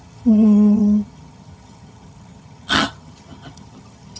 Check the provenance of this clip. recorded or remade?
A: remade